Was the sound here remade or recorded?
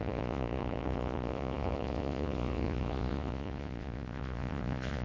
remade